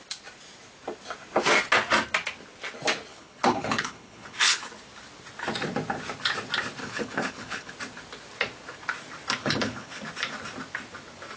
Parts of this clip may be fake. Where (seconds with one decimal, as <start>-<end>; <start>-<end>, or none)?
3.1-4.6; 6.8-7.7; 9.4-10.0